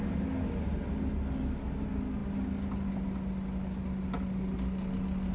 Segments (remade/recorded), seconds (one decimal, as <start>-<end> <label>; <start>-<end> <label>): 0.0-5.3 recorded